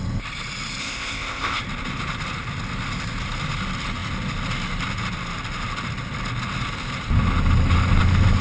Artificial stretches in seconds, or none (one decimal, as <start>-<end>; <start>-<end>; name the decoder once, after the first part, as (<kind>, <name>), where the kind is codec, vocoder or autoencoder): 0.8-1.6 (codec, ZipCodec)